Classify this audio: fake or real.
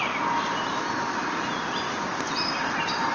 real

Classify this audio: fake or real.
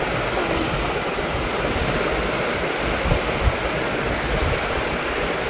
real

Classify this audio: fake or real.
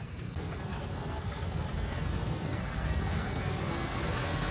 fake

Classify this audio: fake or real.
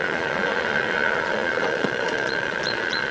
fake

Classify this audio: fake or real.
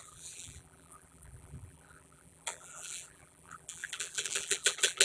fake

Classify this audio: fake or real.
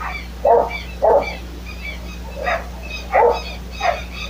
real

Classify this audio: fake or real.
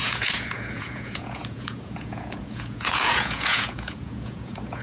fake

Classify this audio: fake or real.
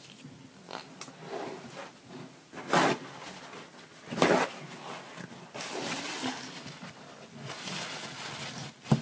real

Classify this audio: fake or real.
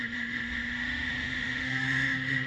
fake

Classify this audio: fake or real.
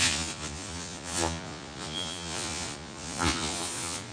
fake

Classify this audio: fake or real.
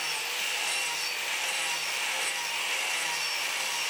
real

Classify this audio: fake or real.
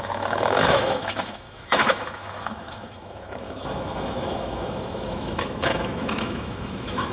fake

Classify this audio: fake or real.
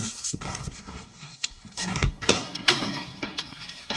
fake